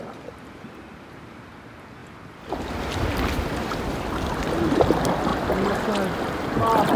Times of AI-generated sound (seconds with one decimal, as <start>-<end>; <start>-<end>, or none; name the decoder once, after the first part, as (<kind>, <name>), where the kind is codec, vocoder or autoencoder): none

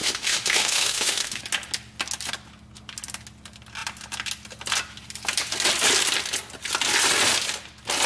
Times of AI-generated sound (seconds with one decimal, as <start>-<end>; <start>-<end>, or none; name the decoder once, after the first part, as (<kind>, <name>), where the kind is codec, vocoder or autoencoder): 0.0-1.4 (autoencoder, DAC-VAE)

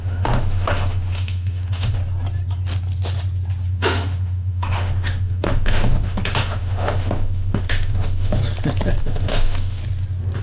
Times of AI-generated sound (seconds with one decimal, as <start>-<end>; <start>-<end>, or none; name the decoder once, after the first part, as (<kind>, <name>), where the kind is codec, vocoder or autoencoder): 0.0-2.0 (autoencoder, DAC-VAE); 3.7-8.4; 9.0-9.8